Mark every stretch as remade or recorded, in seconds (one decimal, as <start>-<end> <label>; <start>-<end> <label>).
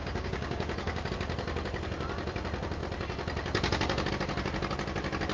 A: 0.0-1.1 remade; 1.1-5.3 recorded